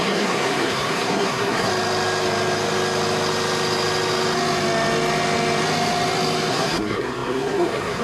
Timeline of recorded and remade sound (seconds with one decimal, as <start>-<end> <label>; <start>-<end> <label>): 0.0-1.7 remade; 1.7-6.5 recorded; 6.5-8.0 remade